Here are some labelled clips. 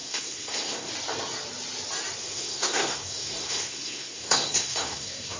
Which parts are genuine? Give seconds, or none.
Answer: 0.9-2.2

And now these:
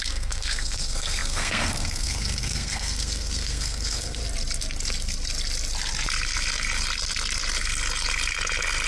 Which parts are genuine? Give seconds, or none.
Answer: 4.2-8.9